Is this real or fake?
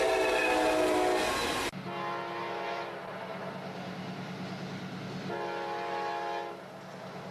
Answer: real